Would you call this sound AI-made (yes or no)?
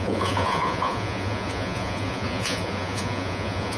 yes